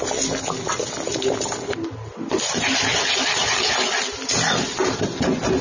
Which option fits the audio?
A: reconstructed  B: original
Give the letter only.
B